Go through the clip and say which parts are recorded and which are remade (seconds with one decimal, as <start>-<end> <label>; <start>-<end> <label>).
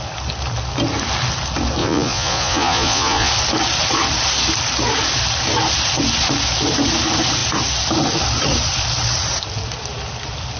0.0-1.8 recorded; 1.8-3.3 remade; 3.3-10.6 recorded